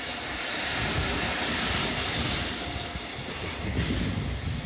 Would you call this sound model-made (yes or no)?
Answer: no